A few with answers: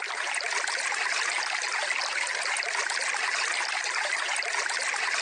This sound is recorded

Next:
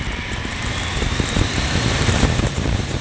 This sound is remade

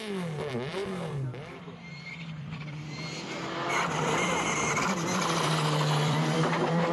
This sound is remade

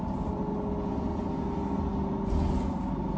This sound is recorded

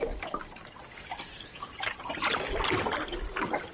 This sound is recorded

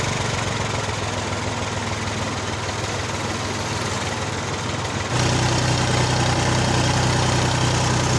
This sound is recorded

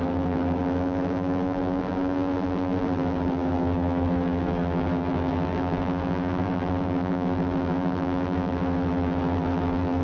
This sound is remade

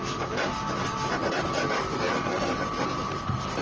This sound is recorded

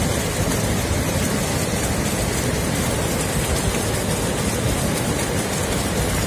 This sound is recorded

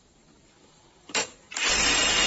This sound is remade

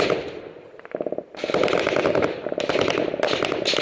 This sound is remade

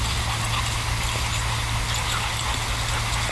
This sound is recorded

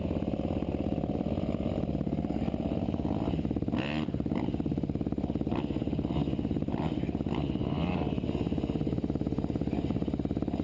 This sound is recorded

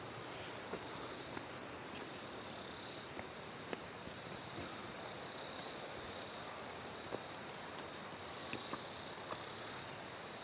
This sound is remade